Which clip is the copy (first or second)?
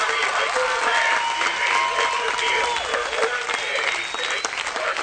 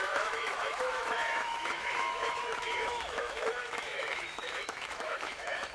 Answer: second